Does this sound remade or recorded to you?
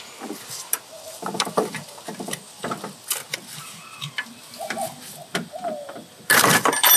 recorded